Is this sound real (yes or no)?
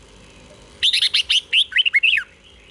yes